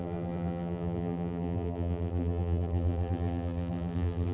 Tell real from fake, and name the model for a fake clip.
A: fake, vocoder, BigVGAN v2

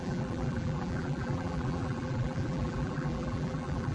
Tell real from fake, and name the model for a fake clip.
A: fake, vocoder, BigVGAN v2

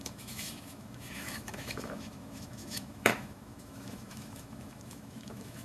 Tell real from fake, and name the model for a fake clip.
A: fake, autoencoder, DAC-VAE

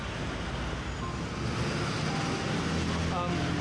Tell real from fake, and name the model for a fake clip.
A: real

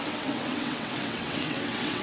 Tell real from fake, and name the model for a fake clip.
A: fake, vocoder, WaveNeXt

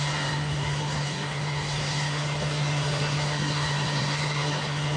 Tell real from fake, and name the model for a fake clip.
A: fake, codec, SNAC